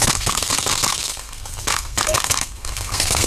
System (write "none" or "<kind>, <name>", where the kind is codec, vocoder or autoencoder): codec, SNAC